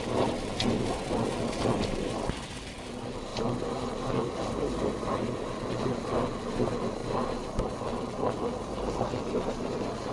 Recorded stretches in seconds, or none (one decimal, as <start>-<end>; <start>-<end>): 0.0-10.1